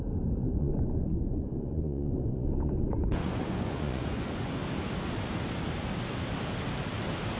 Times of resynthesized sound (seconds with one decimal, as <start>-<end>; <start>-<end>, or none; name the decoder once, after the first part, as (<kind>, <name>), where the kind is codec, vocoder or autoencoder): 0.5-4.5 (vocoder, Vocos)